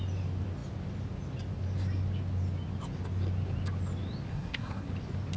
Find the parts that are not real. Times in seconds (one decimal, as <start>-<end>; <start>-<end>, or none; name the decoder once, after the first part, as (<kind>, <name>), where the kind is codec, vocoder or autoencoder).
4.3-4.9 (codec, SNAC)